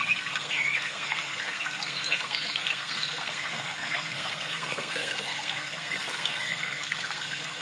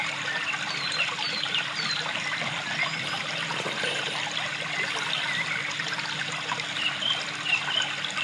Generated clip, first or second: first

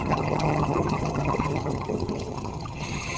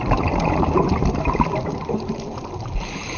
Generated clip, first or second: first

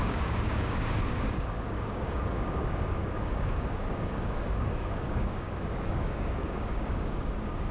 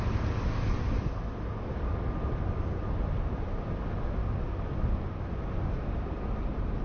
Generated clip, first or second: first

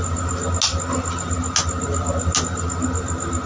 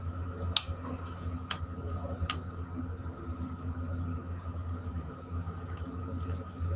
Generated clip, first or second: second